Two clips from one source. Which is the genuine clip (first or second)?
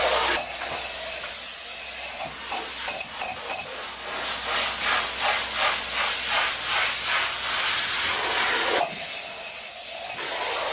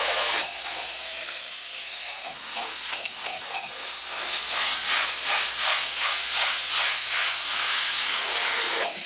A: first